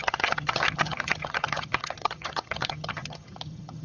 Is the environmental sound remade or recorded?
remade